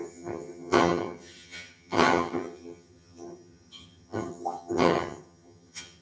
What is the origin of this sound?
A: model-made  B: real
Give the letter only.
A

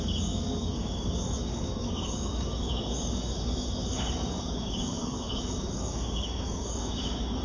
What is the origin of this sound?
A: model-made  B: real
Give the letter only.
A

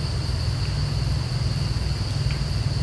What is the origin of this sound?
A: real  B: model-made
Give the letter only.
A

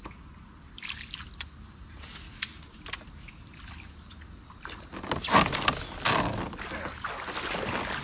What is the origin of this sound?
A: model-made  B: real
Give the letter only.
B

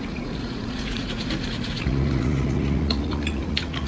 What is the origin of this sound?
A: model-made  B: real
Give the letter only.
A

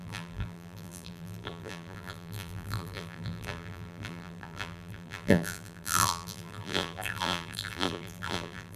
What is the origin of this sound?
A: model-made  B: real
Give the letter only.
A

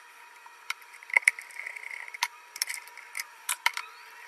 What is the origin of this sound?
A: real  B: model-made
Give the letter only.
B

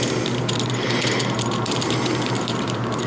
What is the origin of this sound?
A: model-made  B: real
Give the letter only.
A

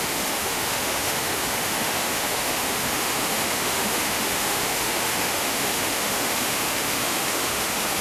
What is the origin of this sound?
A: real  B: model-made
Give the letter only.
B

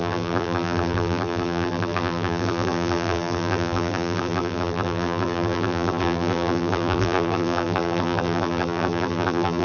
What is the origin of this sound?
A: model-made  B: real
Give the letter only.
A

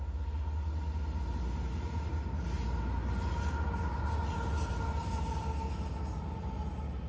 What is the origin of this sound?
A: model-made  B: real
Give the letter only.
B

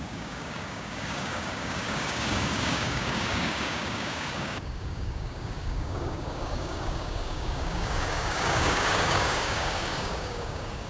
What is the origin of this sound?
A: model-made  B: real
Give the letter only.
A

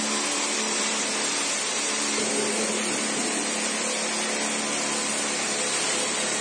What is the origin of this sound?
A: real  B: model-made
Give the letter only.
A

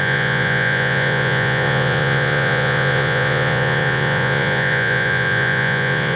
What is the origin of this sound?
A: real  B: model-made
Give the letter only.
B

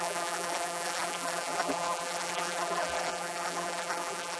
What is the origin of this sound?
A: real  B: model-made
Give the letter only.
B